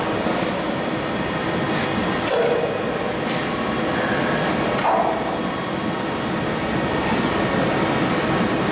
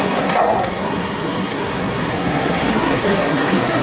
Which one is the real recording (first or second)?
first